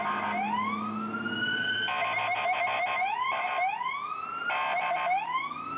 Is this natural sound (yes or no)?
yes